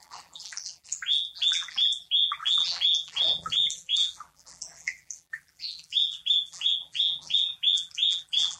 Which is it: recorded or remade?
remade